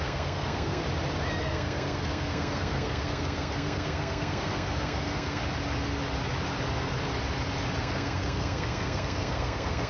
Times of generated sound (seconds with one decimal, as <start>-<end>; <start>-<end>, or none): 0.0-0.8; 1.4-5.4; 7.8-9.9